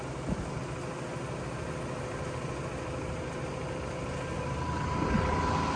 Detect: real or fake real